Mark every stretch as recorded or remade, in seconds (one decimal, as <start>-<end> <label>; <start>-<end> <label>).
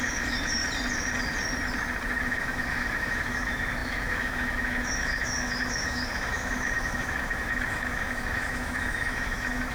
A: 0.0-0.6 remade; 0.6-2.2 recorded; 2.2-9.7 remade